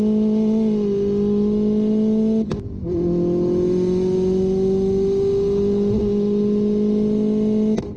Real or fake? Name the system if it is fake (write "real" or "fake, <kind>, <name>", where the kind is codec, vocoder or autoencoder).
real